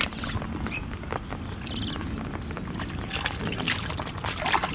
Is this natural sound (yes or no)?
yes